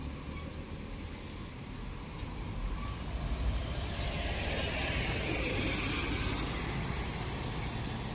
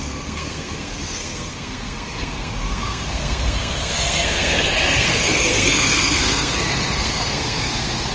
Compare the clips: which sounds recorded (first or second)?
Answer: first